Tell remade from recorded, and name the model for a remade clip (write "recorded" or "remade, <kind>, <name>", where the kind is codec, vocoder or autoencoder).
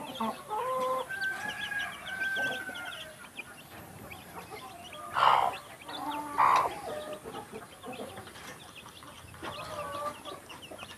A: recorded